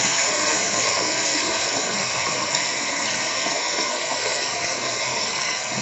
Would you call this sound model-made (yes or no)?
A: yes